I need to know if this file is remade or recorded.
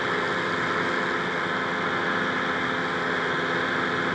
recorded